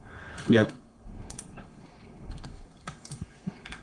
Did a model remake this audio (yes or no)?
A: yes